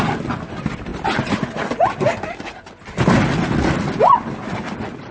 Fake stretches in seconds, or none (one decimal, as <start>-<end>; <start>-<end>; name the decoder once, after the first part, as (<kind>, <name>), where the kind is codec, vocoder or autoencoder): none